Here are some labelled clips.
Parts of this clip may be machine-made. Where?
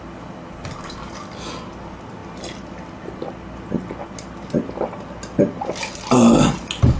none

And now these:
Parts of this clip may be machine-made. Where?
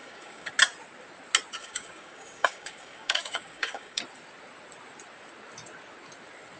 0.0-0.5 (codec, DAC); 1.6-4.0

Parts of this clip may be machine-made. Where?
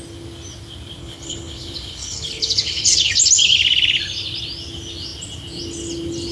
1.0-3.2 (codec, HILCodec)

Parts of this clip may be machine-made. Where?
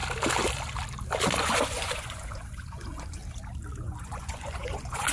1.4-3.2 (vocoder, Vocos); 3.8-5.1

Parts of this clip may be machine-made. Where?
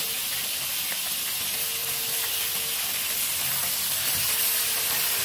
none